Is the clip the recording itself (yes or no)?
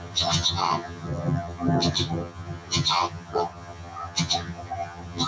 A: no